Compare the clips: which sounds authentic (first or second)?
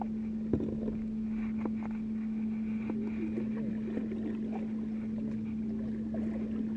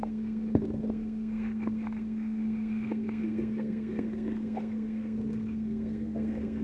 first